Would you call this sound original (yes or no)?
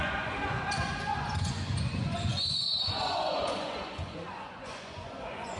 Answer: no